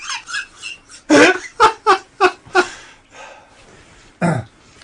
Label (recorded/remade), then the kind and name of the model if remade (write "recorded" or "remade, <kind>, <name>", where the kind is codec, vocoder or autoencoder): recorded